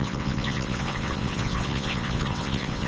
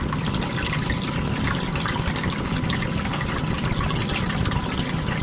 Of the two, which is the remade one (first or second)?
first